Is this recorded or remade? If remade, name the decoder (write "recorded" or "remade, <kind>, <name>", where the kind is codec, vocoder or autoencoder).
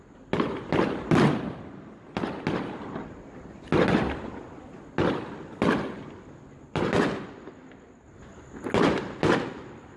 recorded